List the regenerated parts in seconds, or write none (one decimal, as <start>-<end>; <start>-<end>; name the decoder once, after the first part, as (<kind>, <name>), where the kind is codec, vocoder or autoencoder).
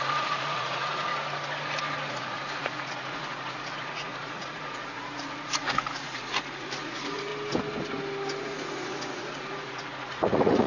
0.0-1.1 (vocoder, Vocos); 2.1-7.3; 8.4-10.7